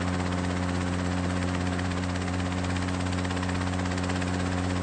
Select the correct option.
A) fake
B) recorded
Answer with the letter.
B